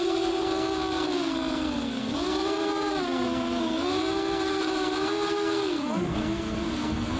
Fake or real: fake